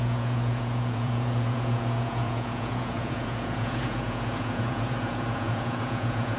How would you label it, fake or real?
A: fake